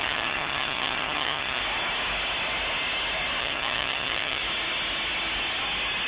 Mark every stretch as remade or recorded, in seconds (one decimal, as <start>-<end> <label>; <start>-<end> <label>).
0.0-1.6 remade; 1.6-3.4 recorded; 3.4-4.4 remade; 4.4-6.1 recorded